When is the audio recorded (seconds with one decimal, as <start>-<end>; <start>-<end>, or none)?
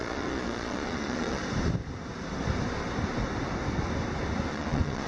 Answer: 1.4-4.5